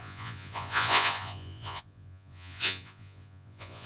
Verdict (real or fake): fake